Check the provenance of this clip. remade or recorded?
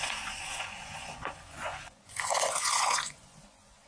remade